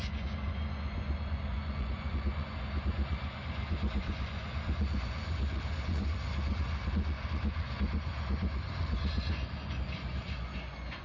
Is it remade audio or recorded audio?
remade